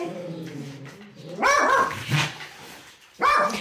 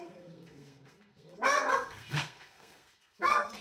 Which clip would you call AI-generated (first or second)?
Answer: second